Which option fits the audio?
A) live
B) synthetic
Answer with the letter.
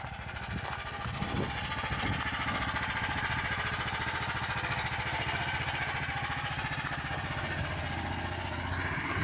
A